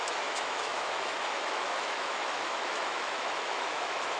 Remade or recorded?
remade